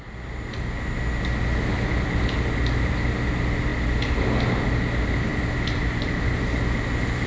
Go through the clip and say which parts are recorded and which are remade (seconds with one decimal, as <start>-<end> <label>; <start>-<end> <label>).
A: 0.0-7.3 recorded